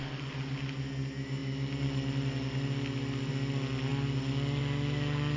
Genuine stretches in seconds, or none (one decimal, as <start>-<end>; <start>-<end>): 0.0-1.4; 3.3-3.9; 4.6-5.4